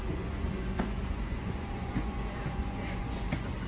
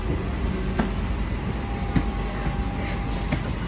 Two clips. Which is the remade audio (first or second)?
first